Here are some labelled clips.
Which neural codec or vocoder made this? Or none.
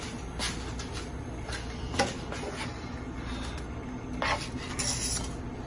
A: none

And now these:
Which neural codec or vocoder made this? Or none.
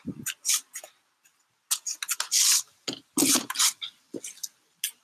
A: none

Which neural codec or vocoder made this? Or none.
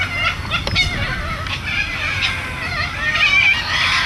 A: none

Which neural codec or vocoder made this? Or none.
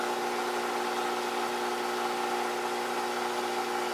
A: none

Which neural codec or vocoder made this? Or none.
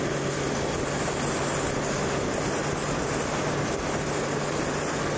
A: none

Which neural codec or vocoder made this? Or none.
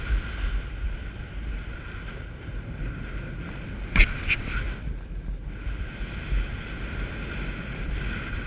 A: none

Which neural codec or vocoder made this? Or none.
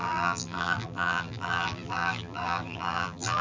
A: vocoder, BigVGAN v2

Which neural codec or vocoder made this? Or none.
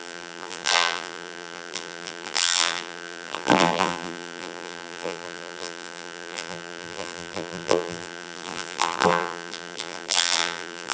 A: vocoder, BigVGAN v2